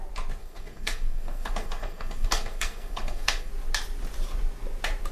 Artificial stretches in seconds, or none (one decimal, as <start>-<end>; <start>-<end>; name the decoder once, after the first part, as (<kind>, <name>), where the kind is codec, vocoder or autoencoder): 0.4-3.5 (codec, SNAC)